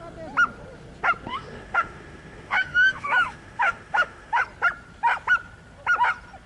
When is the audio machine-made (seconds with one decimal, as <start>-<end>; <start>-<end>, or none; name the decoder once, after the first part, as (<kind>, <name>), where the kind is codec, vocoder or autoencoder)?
1.3-4.4 (autoencoder, DAC-VAE)